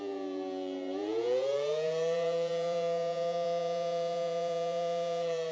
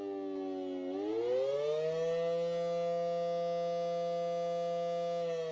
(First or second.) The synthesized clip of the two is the first